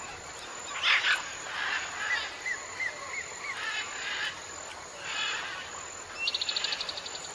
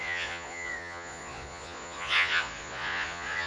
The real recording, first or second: first